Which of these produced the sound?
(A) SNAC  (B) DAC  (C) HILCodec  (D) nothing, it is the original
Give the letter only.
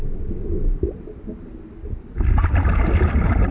D